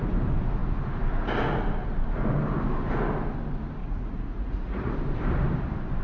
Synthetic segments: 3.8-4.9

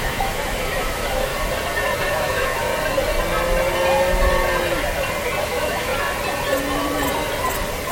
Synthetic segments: 0.0-1.3; 2.1-2.7; 5.4-5.9

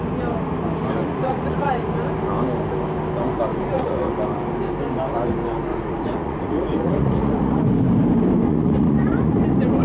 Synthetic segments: 1.0-1.7; 3.5-4.1; 5.7-7.6; 8.5-9.4

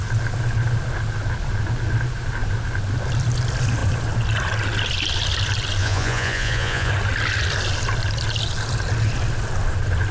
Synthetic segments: 5.8-6.9

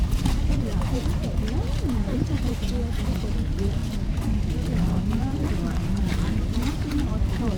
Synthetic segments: 0.0-3.8; 6.0-7.6